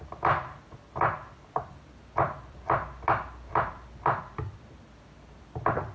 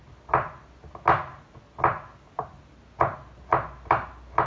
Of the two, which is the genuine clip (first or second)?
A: second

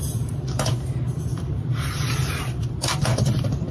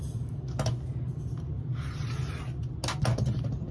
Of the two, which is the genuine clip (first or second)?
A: second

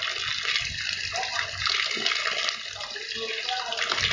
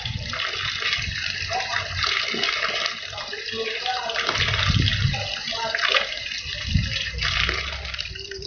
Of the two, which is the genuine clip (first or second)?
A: first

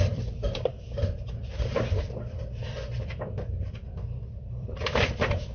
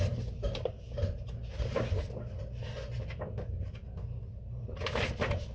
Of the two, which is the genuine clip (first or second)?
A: second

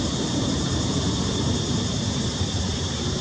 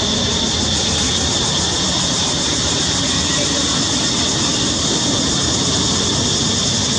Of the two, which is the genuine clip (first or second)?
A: second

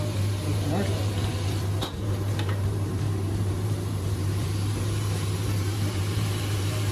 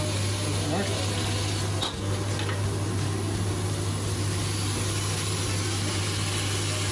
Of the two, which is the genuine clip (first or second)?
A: second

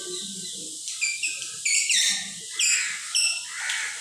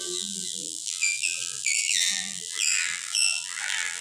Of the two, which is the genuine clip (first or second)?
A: first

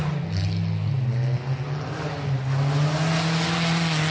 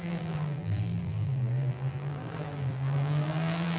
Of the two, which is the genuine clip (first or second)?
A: first